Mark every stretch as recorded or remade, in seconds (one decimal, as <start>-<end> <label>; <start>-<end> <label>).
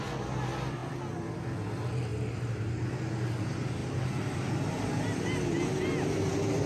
0.0-6.7 recorded